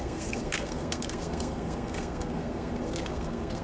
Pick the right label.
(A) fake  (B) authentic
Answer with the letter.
A